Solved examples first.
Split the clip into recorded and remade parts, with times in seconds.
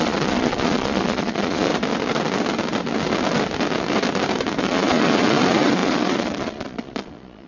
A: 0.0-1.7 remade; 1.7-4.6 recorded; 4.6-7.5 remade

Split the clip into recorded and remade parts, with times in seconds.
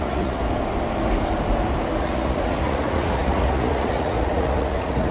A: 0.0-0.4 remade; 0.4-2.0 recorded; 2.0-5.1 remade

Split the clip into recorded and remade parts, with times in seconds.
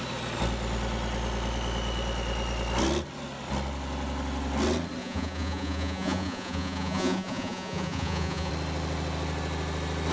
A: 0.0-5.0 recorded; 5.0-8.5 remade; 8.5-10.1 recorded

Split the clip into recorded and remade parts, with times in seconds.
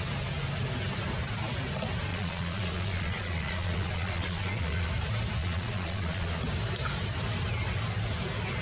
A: 0.0-2.1 recorded; 2.1-4.9 remade; 4.9-5.4 recorded; 5.4-6.4 remade; 6.4-8.6 recorded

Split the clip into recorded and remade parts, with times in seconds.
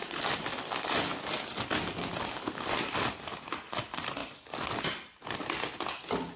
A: 0.0-6.4 recorded